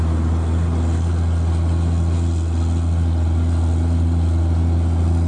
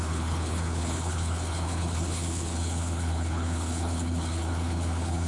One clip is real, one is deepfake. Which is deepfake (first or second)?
second